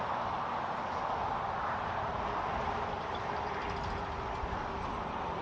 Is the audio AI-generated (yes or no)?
no